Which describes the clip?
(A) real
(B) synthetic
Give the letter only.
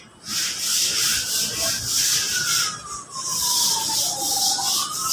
A